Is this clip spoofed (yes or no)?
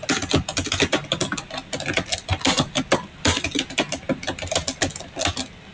no